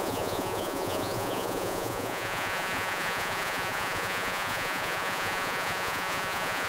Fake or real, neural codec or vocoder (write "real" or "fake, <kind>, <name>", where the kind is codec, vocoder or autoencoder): fake, vocoder, Vocos